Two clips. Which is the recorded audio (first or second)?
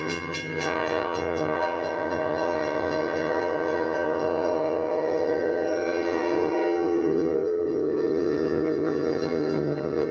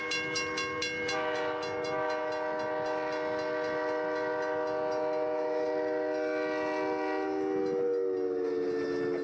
second